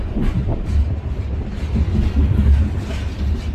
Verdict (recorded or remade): recorded